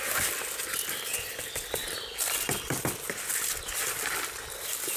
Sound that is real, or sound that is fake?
real